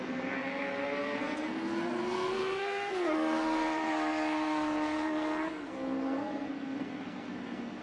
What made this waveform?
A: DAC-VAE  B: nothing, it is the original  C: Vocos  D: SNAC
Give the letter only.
D